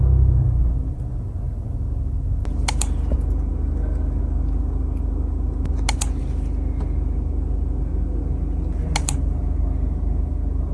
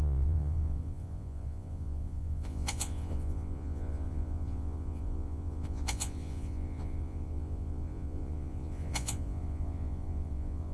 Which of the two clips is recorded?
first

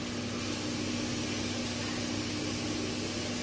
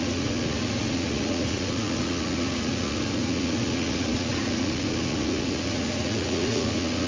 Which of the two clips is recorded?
first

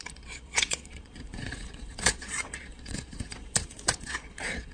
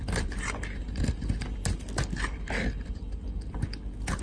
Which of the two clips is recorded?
second